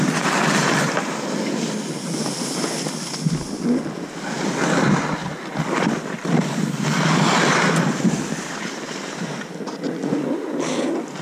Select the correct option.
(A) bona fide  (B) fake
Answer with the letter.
A